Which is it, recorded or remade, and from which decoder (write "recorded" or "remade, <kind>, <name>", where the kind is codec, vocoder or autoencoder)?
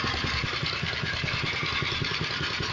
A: recorded